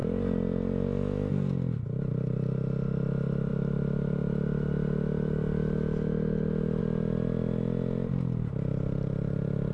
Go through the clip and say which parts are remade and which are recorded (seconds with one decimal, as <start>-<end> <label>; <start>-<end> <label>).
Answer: 0.0-9.7 recorded